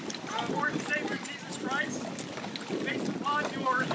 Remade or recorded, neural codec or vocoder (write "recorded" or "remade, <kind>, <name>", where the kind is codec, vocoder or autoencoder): recorded